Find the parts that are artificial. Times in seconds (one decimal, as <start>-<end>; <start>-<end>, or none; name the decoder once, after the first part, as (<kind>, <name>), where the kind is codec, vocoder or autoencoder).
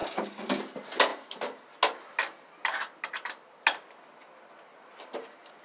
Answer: 0.0-0.6 (codec, DAC)